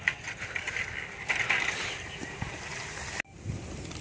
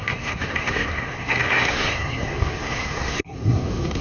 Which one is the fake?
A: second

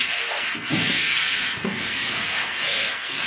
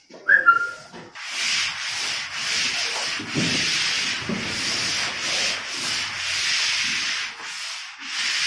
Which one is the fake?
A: first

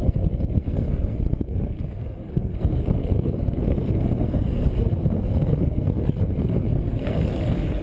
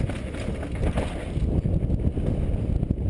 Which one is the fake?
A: first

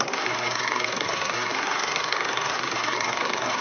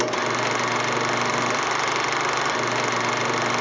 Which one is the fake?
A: first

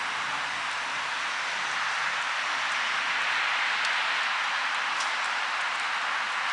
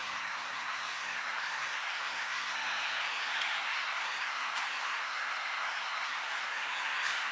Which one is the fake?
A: second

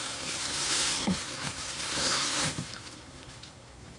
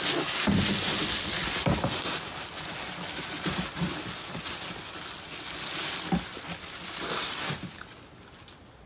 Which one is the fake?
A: first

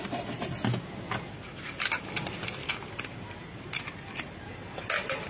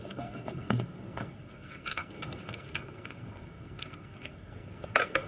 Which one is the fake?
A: second